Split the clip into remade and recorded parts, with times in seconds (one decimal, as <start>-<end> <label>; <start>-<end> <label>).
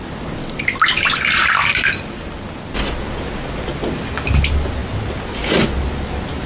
0.0-1.4 recorded; 1.4-2.2 remade; 2.2-6.5 recorded